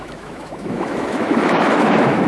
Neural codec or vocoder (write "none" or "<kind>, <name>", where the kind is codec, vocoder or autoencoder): autoencoder, DAC-VAE